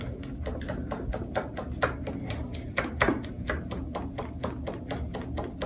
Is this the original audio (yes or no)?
yes